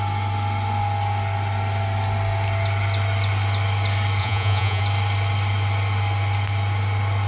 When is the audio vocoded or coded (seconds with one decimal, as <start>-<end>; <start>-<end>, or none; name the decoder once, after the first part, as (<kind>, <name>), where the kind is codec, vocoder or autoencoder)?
4.2-4.8 (vocoder, Vocos)